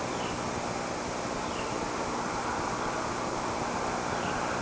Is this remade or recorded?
recorded